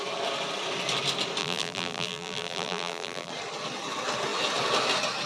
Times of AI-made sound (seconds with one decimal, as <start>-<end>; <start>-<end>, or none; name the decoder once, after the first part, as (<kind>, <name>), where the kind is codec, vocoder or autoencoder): 1.4-3.3 (vocoder, BigVGAN v2)